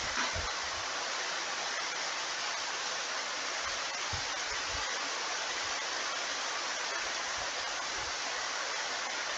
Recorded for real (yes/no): yes